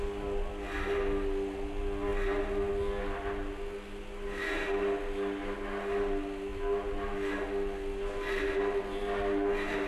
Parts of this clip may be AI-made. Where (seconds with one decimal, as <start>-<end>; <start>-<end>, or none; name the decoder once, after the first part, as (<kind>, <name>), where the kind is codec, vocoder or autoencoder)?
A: none